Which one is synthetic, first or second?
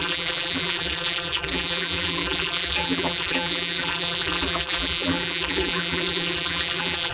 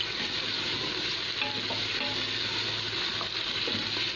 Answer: first